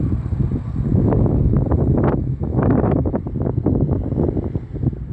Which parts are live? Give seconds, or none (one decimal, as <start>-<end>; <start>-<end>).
0.0-0.9; 1.4-2.2; 3.2-5.1